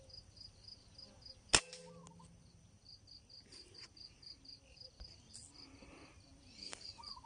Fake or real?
real